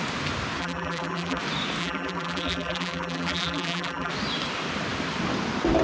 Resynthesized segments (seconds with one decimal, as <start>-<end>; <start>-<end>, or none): 0.6-1.4; 1.8-4.1